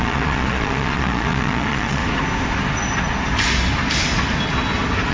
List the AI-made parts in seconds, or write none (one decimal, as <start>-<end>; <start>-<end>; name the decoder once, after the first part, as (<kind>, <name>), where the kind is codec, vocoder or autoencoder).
0.0-2.0 (vocoder, Vocos)